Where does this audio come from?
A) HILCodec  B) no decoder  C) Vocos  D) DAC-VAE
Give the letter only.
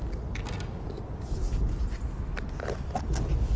B